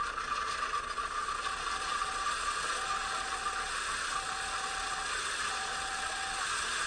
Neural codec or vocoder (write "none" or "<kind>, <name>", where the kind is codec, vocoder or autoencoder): vocoder, Vocos